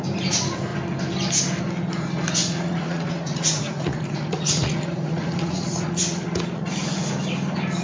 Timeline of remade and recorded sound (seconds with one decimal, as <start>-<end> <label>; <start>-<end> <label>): 0.0-2.4 recorded; 2.4-7.1 remade; 7.1-7.8 recorded